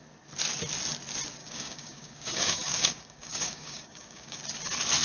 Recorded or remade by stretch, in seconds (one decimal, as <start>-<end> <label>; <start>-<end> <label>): 0.0-1.4 recorded; 1.4-4.4 remade; 4.4-5.0 recorded